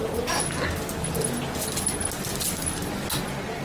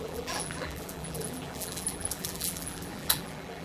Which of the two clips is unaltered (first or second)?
first